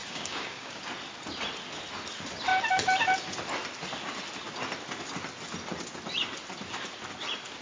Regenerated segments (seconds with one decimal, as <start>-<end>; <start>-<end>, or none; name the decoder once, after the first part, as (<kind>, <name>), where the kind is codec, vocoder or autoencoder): 0.0-0.8 (codec, DAC)